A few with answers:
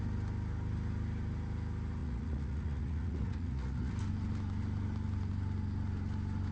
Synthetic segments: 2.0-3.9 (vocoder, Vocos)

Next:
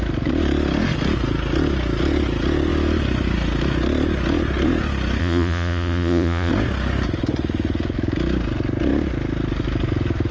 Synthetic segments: 5.2-6.5 (vocoder, Vocos)

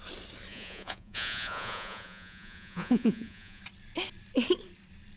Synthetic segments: 0.5-3.6 (vocoder, Vocos)